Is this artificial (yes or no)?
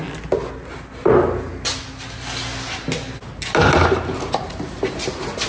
no